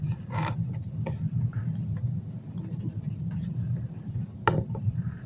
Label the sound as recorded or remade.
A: recorded